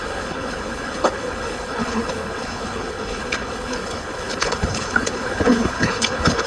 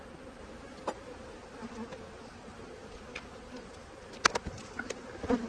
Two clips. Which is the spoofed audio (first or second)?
first